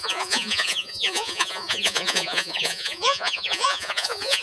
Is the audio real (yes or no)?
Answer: no